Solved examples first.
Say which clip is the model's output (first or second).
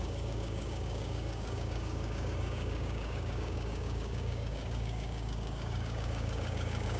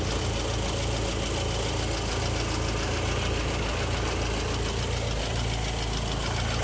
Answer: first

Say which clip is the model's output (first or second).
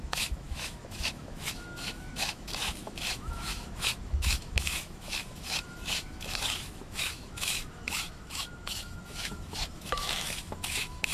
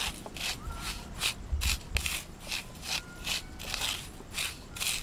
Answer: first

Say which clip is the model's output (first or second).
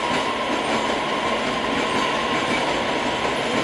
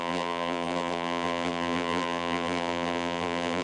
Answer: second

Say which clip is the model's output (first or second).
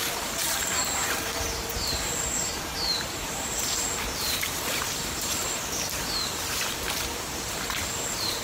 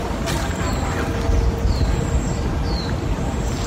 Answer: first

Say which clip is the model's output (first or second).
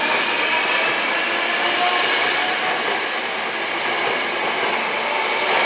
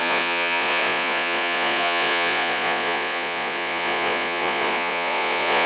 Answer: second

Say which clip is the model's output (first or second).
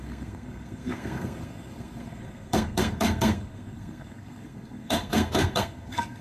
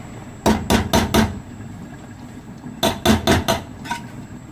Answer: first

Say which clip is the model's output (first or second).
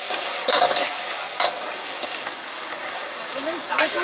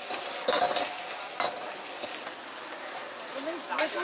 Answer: first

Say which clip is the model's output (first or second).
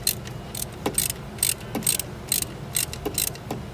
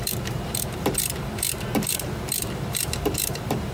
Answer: second